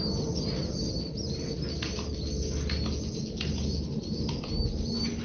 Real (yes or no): yes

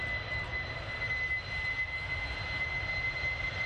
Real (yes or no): yes